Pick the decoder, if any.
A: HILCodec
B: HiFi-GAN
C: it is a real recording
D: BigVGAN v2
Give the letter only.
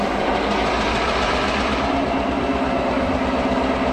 C